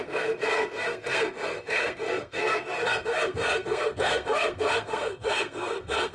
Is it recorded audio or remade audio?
remade